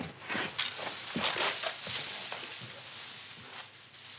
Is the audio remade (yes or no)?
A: no